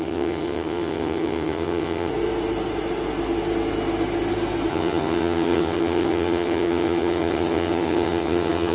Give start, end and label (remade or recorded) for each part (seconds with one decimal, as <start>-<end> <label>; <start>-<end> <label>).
0.0-2.1 remade; 2.1-4.7 recorded; 4.7-8.7 remade